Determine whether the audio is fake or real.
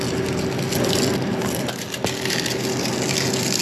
real